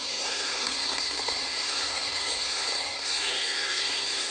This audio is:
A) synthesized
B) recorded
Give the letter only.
A